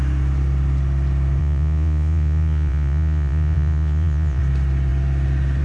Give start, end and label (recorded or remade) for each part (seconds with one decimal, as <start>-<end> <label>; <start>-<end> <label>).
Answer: 0.0-1.4 recorded; 1.4-4.4 remade; 4.4-5.6 recorded